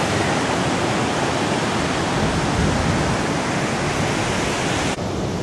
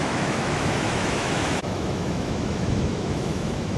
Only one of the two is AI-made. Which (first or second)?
second